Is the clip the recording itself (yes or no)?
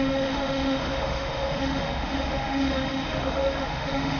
no